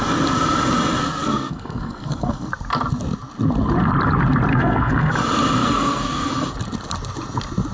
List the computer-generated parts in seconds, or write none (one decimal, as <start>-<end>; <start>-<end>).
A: 1.0-2.5; 4.5-5.1; 5.6-6.3